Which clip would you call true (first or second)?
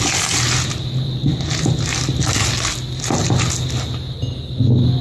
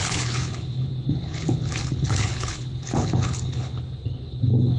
first